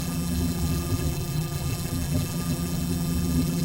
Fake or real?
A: fake